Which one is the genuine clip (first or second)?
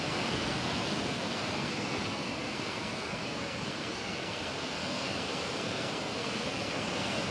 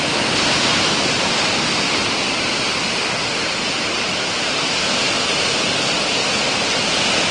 second